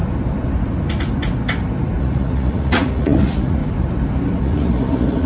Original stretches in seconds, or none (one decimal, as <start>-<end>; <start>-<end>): 0.0-2.0; 3.6-4.4